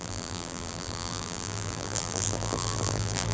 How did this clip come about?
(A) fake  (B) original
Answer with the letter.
A